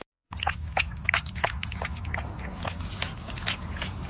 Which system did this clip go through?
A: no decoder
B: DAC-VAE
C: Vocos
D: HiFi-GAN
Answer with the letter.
A